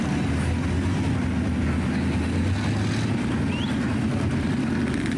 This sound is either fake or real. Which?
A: real